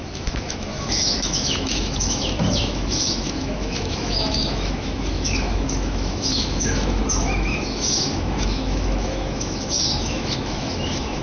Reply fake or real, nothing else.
fake